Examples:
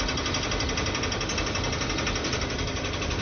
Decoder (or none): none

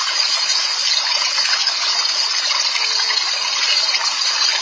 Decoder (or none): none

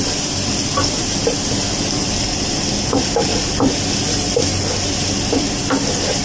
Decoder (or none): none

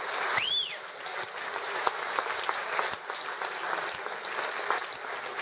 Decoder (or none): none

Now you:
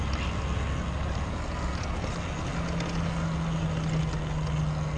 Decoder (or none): none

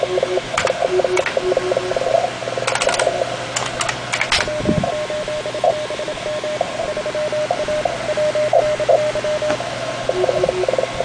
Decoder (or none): none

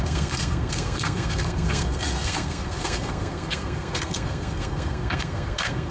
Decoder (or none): codec, SNAC